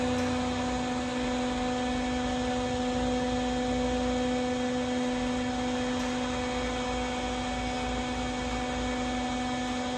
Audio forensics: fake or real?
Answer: real